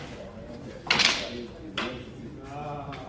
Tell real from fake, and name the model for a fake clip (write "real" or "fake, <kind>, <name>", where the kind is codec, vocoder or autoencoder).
real